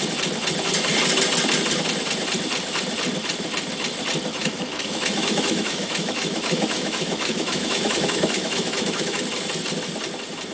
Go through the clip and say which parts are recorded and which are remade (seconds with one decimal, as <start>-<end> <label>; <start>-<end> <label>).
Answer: 0.0-4.4 recorded; 4.4-9.2 remade; 9.2-10.5 recorded